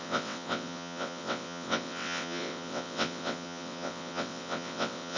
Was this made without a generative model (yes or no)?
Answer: no